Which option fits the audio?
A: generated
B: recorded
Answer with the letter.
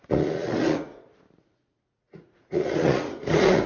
A